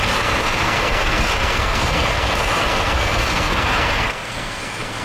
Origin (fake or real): fake